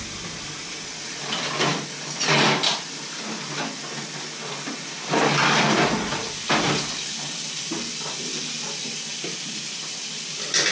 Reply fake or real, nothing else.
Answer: real